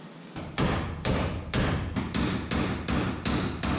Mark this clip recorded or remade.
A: recorded